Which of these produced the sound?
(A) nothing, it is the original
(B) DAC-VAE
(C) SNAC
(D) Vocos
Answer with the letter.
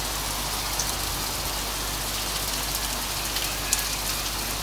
A